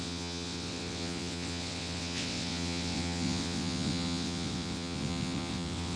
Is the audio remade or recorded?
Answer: remade